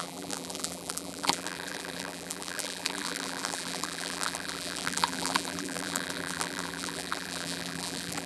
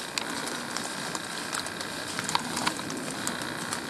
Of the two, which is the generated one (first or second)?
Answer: first